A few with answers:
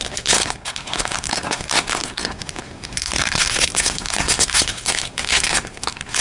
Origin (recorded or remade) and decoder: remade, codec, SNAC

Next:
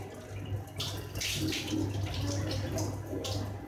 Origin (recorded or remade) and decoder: recorded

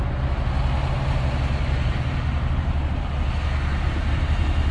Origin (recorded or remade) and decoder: recorded